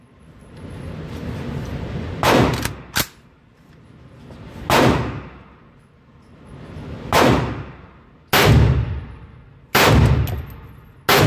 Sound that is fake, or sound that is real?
real